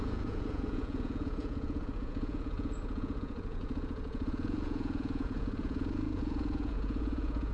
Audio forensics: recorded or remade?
remade